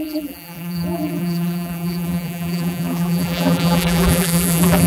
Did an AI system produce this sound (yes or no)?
yes